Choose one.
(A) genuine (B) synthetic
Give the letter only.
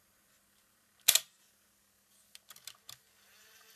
A